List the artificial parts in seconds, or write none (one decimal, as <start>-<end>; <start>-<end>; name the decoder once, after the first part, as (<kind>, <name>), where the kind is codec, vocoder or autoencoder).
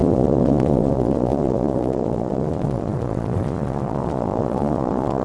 0.0-5.2 (vocoder, Vocos)